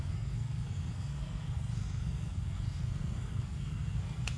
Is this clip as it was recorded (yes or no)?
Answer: no